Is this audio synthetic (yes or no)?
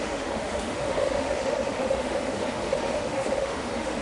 yes